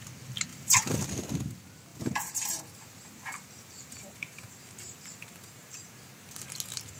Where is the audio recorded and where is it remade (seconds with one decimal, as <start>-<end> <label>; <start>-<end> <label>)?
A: 0.0-0.5 recorded; 0.5-1.1 remade; 1.1-1.9 recorded; 1.9-5.9 remade; 5.9-7.0 recorded